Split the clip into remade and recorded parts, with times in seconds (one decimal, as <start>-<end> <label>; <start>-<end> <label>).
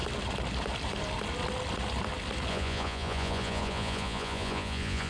0.0-2.5 recorded; 2.5-5.1 remade